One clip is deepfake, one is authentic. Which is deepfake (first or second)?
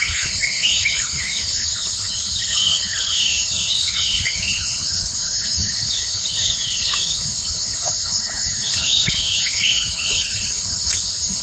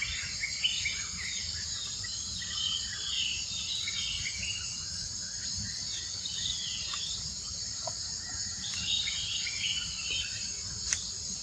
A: first